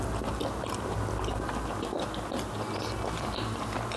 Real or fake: real